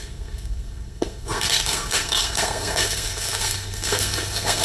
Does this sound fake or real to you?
fake